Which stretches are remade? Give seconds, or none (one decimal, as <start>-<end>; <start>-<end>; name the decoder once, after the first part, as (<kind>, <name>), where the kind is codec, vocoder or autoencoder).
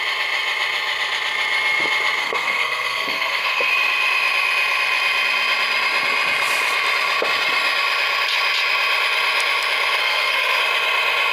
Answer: 2.2-3.7 (codec, SNAC); 10.0-10.6